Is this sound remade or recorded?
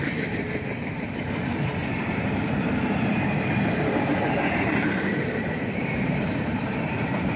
remade